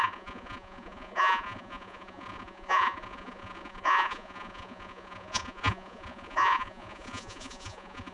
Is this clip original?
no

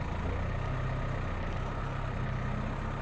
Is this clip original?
yes